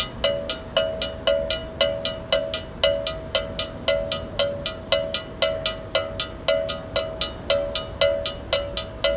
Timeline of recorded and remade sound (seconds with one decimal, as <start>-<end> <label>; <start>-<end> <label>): 0.0-9.2 recorded